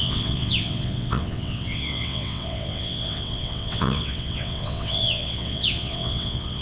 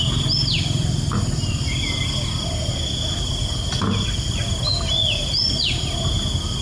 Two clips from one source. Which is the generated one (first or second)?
first